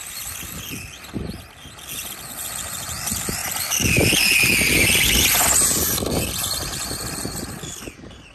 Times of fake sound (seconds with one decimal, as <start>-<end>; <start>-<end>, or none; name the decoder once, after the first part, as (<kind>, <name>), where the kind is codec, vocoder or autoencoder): none